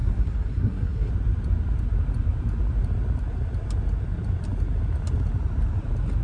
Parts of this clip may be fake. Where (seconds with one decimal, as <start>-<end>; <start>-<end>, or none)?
0.0-1.1